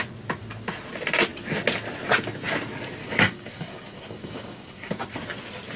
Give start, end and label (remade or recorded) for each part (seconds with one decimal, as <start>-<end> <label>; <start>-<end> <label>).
0.0-3.0 recorded; 3.0-4.9 remade; 4.9-5.8 recorded